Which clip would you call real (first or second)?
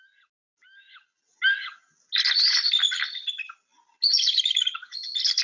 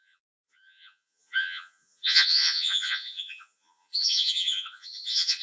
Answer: first